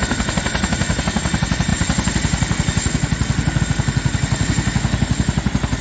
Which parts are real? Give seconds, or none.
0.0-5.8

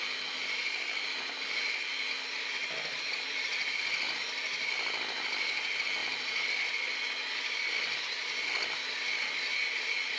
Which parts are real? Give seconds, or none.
0.0-10.2

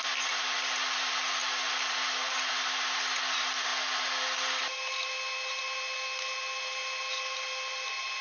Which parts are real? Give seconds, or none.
0.0-8.2

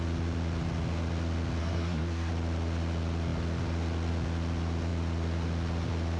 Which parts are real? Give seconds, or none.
0.0-1.6; 2.3-6.2

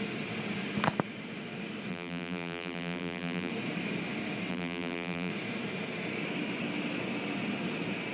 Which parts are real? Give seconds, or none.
0.0-1.9; 3.5-4.5; 5.3-8.1